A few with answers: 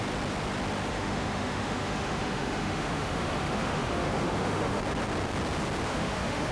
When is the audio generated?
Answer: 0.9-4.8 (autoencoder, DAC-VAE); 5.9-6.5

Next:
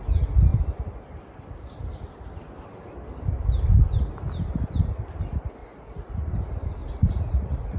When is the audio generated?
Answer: 5.6-6.3 (vocoder, Vocos); 6.8-7.8

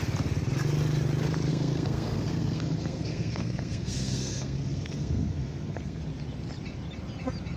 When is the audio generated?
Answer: 1.5-6.0 (codec, SNAC)

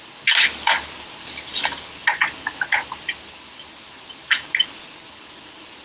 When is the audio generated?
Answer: none

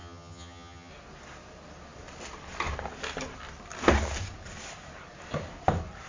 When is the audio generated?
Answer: 0.0-0.9 (vocoder, HiFi-GAN)